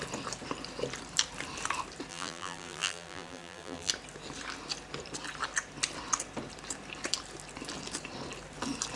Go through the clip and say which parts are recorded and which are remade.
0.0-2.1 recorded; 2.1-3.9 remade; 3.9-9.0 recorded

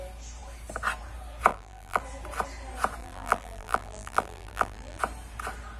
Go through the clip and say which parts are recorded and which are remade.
0.0-1.5 recorded; 1.5-2.0 remade; 2.0-3.0 recorded; 3.0-5.0 remade; 5.0-5.8 recorded

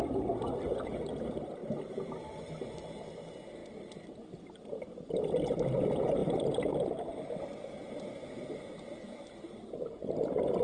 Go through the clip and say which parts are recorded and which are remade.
0.0-1.6 recorded; 1.6-2.5 remade; 2.5-6.2 recorded; 6.2-6.7 remade; 6.7-10.6 recorded

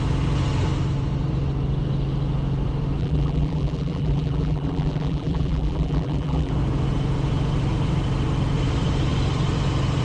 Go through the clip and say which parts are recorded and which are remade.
0.0-3.0 recorded; 3.0-6.5 remade; 6.5-10.0 recorded